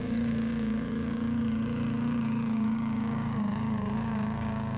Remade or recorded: remade